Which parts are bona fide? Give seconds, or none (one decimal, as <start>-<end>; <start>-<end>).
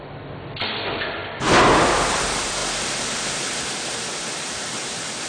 0.0-5.3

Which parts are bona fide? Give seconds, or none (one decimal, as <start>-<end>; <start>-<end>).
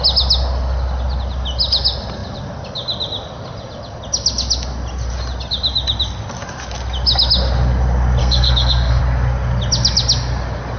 0.0-8.2; 9.0-10.8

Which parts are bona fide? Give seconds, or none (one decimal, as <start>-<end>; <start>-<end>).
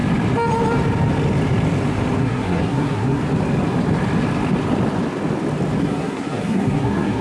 0.0-2.2; 3.2-5.8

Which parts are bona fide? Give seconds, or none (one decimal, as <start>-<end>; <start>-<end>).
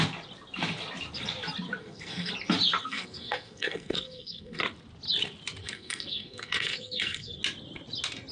0.0-1.8; 2.3-2.8; 4.6-5.6; 7.4-8.3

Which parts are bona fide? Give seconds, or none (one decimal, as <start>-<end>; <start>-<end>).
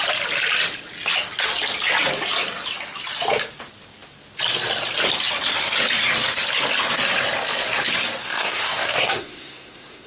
0.0-8.2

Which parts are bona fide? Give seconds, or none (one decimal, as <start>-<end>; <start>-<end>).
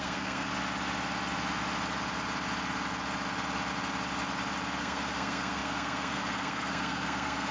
0.5-4.8